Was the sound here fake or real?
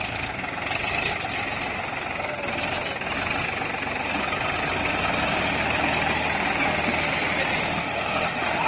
real